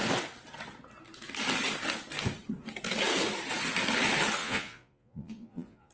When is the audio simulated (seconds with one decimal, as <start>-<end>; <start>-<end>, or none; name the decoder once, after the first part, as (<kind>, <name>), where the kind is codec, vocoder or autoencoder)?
4.4-5.9 (vocoder, Vocos)

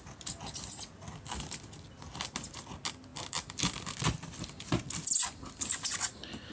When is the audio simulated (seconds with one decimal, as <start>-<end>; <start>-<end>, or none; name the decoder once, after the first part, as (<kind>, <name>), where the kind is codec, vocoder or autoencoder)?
none

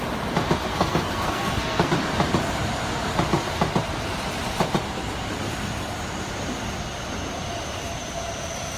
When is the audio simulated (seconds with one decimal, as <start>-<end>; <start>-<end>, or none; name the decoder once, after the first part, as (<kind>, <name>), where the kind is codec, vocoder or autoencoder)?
0.7-1.9 (codec, SNAC)

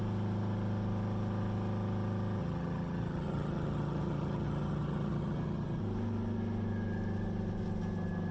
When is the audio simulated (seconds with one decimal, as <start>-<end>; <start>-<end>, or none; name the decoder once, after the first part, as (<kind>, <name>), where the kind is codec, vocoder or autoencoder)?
2.4-5.8 (vocoder, HiFi-GAN)